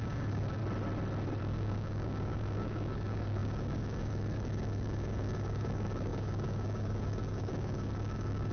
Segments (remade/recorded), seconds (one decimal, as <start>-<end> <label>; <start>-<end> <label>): 0.0-0.6 remade; 0.6-1.4 recorded; 1.4-8.5 remade